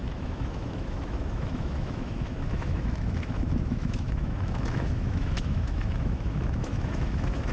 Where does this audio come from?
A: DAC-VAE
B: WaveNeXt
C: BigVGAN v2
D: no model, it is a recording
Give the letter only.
A